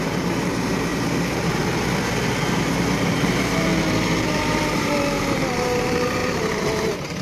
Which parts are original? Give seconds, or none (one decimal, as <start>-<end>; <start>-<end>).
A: 0.9-2.5; 3.7-4.3